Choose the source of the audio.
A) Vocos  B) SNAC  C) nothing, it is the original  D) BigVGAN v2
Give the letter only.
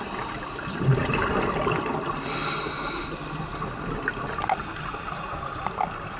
C